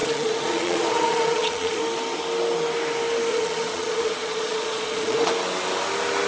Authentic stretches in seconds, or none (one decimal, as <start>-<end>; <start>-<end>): 1.8-3.3; 5.3-6.3